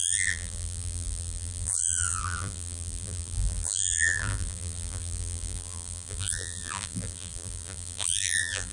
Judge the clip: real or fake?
fake